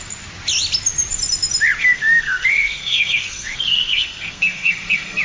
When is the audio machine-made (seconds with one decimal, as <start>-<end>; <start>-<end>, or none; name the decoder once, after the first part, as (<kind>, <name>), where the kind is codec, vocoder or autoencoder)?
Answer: 1.8-5.2 (codec, SNAC)